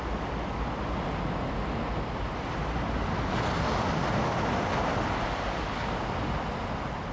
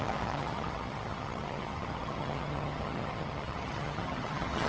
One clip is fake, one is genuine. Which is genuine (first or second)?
first